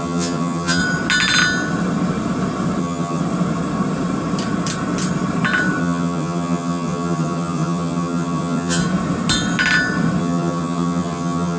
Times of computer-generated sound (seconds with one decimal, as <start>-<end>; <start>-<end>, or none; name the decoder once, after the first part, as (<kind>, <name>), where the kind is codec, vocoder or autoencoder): 0.0-0.8 (vocoder, HiFi-GAN); 2.8-3.2; 5.8-8.8; 10.2-11.6